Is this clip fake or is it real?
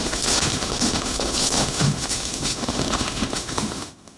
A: fake